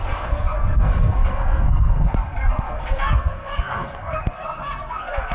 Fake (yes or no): yes